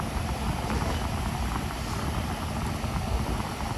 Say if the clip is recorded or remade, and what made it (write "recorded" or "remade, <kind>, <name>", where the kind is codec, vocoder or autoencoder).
recorded